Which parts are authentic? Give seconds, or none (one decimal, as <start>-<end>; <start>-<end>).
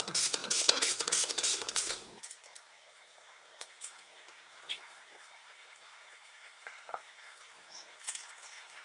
none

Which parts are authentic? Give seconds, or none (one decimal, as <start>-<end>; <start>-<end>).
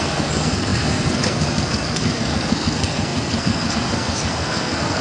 none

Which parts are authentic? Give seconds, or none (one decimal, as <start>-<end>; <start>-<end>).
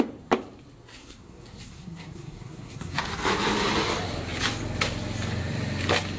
0.0-0.9; 3.0-6.2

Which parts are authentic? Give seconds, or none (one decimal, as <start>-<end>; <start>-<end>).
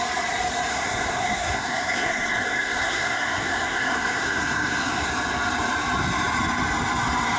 0.0-0.7; 5.1-7.4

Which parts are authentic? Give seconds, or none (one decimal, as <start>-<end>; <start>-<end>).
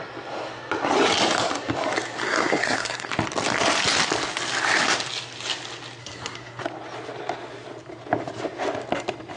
0.0-2.2; 3.1-6.0; 6.6-9.4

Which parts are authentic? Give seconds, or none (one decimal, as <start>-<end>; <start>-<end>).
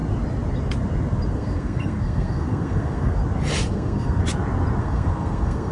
0.0-1.3; 3.2-3.7; 4.2-4.8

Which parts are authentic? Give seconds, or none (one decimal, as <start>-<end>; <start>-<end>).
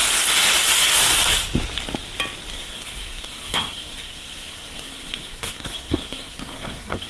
0.0-2.5